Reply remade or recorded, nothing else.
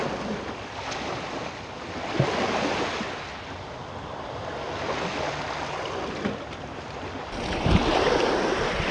recorded